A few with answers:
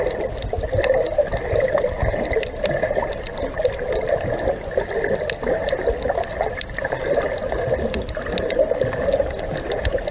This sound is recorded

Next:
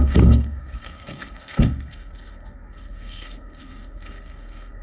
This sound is remade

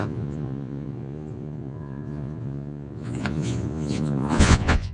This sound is remade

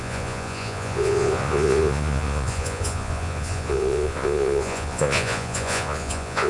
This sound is remade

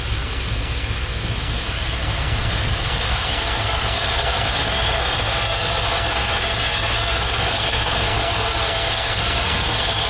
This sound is remade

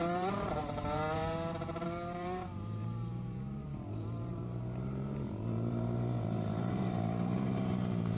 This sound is remade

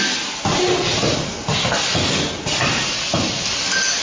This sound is recorded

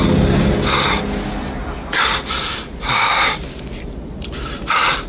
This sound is recorded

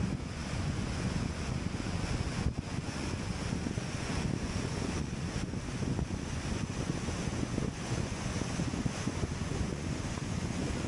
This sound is remade